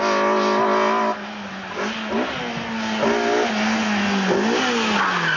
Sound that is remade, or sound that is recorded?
recorded